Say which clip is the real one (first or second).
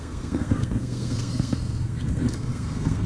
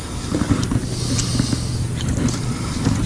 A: second